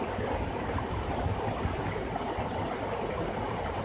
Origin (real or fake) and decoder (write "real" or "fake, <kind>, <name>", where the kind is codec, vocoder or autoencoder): fake, vocoder, BigVGAN v2